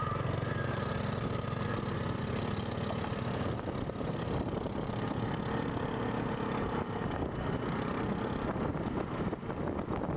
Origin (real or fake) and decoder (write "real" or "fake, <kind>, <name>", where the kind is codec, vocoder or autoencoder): real